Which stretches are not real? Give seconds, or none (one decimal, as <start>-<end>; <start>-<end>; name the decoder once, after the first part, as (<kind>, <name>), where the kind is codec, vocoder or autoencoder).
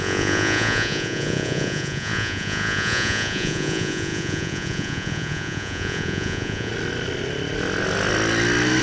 0.0-6.7 (vocoder, Vocos)